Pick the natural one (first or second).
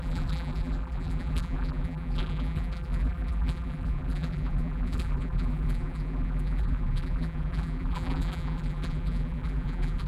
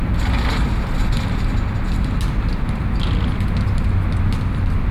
second